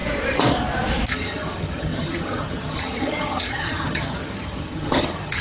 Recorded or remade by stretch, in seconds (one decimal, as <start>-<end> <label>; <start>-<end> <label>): 0.0-1.1 recorded; 1.1-5.4 remade